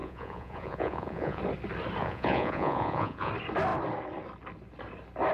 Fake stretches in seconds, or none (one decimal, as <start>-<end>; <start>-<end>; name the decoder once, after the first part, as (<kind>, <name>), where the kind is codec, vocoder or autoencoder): 0.0-1.4 (vocoder, Vocos); 2.0-3.3